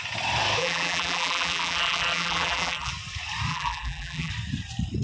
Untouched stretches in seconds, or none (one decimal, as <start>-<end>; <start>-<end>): 0.0-0.6; 2.9-3.5; 4.3-5.0